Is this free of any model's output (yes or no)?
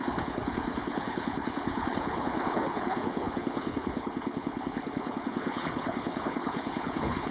no